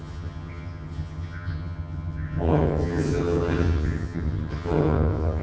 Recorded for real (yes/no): no